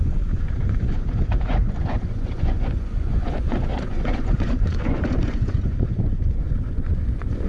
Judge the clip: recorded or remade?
remade